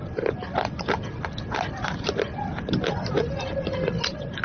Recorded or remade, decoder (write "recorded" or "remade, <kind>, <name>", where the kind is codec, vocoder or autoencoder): recorded